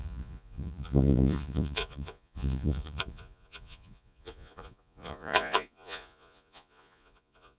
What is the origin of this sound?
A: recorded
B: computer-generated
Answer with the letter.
B